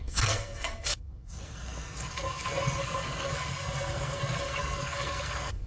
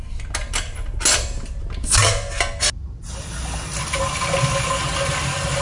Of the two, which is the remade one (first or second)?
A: first